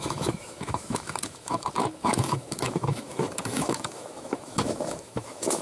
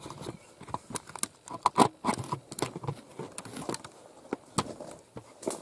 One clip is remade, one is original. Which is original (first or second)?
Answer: second